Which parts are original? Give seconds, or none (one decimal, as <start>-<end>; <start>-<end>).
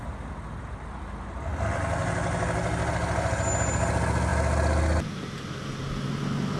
0.0-6.6